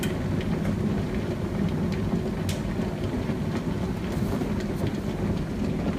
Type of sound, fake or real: real